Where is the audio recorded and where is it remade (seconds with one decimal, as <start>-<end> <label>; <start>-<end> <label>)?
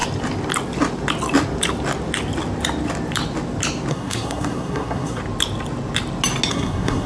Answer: 0.0-3.9 recorded; 3.9-5.2 remade; 5.2-6.5 recorded; 6.5-7.1 remade